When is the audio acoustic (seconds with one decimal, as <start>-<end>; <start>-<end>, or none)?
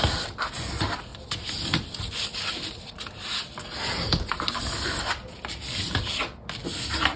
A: 0.0-1.1; 2.9-7.2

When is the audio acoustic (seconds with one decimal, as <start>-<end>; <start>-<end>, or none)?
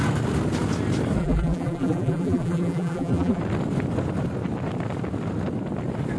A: 0.0-1.2; 3.4-6.2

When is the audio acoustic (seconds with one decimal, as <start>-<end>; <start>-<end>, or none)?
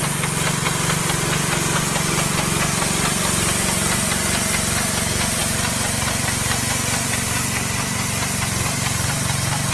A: 0.0-5.4; 6.7-9.7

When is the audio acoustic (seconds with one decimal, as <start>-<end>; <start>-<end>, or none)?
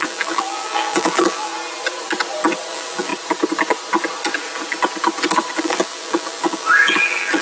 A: 1.5-2.7; 3.1-5.6